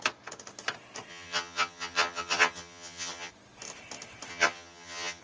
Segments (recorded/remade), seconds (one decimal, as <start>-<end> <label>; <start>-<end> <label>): 0.0-1.1 recorded; 1.1-3.3 remade; 3.3-4.3 recorded; 4.3-5.2 remade